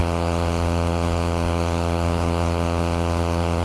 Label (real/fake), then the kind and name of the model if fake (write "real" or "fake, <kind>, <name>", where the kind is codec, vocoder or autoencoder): fake, autoencoder, DAC-VAE